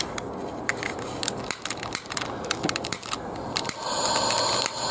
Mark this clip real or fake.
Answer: real